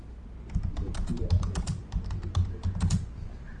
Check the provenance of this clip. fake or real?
fake